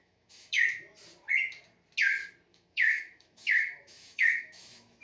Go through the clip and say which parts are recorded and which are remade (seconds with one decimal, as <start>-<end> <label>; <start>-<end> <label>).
0.0-0.6 remade; 0.6-2.5 recorded; 2.5-5.0 remade